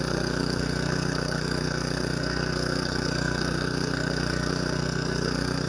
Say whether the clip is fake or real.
fake